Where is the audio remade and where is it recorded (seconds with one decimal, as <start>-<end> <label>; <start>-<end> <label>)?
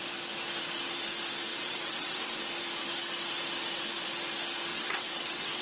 0.0-1.5 recorded; 1.5-2.4 remade; 2.4-4.7 recorded; 4.7-5.6 remade